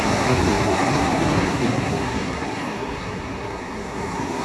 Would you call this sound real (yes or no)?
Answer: no